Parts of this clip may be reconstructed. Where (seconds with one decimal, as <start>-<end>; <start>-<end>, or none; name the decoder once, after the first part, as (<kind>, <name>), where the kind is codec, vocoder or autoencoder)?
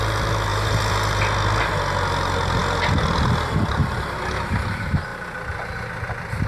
0.5-1.2 (vocoder, BigVGAN v2)